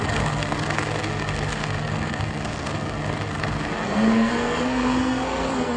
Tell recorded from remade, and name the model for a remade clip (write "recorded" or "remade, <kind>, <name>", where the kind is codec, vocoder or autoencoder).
remade, codec, SNAC